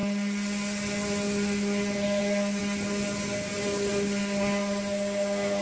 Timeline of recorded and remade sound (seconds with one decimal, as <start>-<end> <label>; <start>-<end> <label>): 0.0-5.6 recorded